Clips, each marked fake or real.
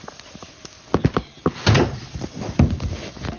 real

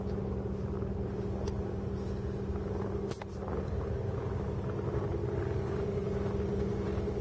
real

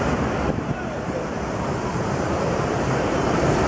fake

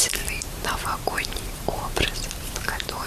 fake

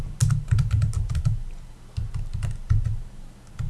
real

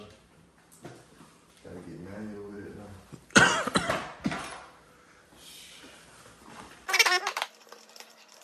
fake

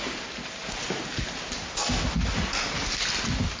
real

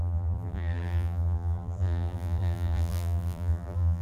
fake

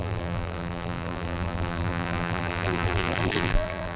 fake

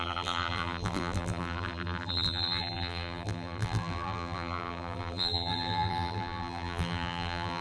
fake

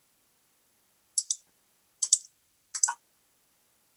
fake